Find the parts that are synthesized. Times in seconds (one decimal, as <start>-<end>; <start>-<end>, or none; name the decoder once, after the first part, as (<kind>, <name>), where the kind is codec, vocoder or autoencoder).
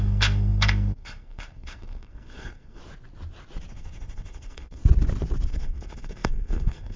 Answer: 0.0-2.8 (codec, SNAC); 3.7-4.8; 5.5-7.0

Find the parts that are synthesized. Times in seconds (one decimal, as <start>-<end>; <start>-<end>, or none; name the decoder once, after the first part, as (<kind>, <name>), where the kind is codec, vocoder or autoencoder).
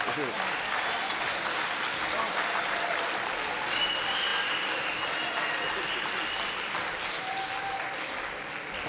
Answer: none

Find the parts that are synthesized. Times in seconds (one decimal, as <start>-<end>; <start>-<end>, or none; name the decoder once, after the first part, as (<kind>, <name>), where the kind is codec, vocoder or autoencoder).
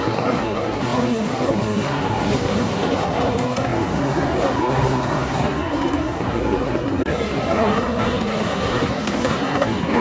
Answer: 0.0-10.0 (codec, SNAC)